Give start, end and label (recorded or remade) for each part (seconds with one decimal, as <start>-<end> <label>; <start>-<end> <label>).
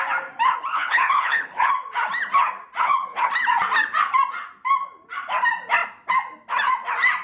0.0-0.7 recorded; 0.7-1.7 remade; 1.7-2.8 recorded; 2.8-3.3 remade; 3.3-7.2 recorded